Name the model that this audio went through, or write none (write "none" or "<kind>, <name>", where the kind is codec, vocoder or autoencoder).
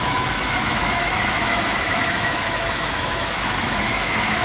autoencoder, DAC-VAE